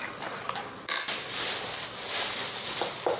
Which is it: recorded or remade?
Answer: recorded